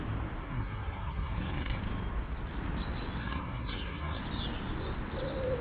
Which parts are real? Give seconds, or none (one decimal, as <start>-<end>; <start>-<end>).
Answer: 0.0-0.4; 1.8-3.2; 4.2-5.6